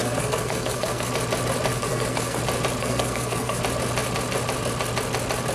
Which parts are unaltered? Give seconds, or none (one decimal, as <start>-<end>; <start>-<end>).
1.1-1.7; 2.4-2.8; 3.6-5.5